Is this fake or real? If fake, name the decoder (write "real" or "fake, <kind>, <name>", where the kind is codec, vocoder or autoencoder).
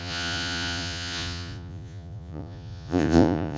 fake, vocoder, Vocos